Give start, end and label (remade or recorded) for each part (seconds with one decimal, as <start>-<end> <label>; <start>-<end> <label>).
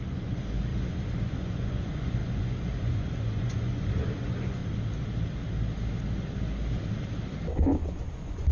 0.0-4.6 remade; 4.6-8.1 recorded; 8.1-8.5 remade